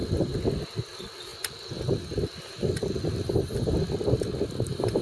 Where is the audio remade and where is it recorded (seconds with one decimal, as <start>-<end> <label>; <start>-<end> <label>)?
0.0-5.0 recorded